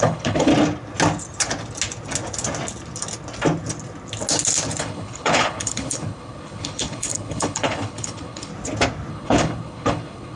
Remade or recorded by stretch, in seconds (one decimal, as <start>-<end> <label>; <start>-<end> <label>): 0.0-0.5 remade; 0.5-4.8 recorded; 4.8-8.5 remade; 8.5-9.1 recorded; 9.1-10.4 remade